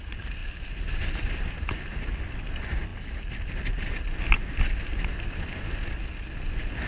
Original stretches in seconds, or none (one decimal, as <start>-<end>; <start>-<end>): 0.0-6.9

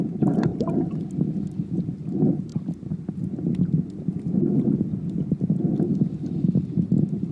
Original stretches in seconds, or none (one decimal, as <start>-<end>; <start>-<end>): 0.0-0.5; 1.0-7.3

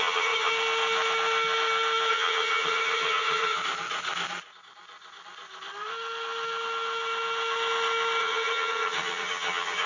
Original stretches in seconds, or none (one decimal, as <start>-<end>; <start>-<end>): 0.5-2.1; 3.6-8.2

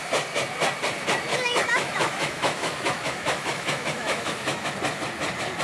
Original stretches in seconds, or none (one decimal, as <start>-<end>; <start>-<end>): 0.0-1.3; 4.7-5.6

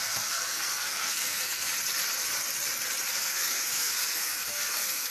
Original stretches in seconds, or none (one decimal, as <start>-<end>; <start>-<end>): 1.7-3.1

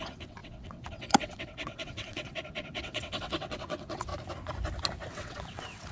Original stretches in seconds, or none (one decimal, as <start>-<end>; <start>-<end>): 4.1-5.1

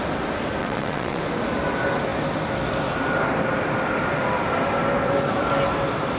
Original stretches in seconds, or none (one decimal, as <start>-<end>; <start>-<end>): 0.0-0.6; 1.2-6.2

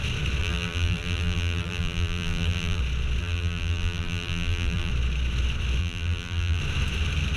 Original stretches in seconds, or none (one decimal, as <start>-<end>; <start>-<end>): 0.0-0.4; 2.8-3.2; 4.9-5.8; 6.6-7.4